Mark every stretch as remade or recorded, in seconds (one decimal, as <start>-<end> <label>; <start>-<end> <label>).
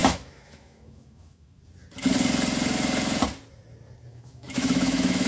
0.0-1.6 remade; 1.6-4.1 recorded; 4.1-5.3 remade